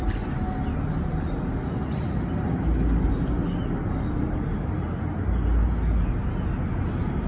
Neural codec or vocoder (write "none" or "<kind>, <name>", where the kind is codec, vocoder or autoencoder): none